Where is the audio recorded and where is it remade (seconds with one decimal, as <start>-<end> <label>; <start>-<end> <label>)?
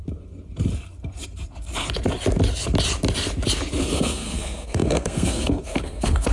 0.0-3.8 recorded; 3.8-6.3 remade